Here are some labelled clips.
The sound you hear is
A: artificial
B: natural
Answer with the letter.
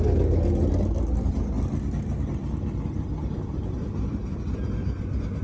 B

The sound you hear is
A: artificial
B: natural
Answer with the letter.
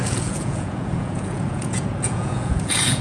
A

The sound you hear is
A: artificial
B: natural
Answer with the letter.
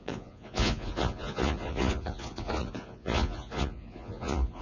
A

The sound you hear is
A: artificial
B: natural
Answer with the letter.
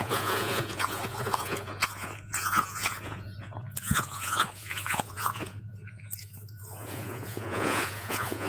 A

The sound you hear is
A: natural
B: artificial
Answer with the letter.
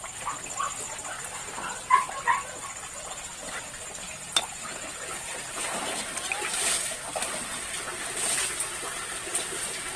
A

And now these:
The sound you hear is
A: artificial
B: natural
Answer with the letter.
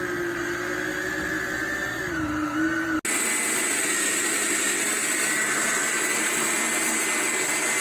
B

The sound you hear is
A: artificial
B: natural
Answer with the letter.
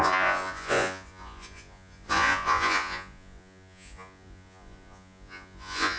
A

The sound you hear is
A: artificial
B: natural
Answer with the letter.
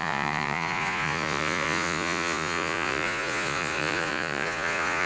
A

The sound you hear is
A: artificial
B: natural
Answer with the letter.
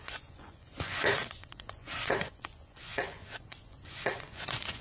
A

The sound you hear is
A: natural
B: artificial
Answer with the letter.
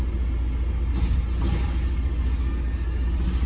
A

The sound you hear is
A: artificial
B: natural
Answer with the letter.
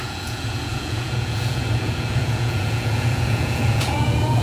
A